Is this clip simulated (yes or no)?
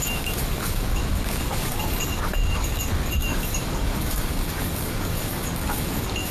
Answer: yes